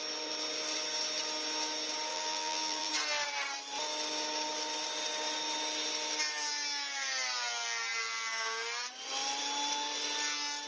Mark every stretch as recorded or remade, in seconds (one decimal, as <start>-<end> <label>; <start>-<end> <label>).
0.0-2.1 recorded; 2.1-2.9 remade; 2.9-10.7 recorded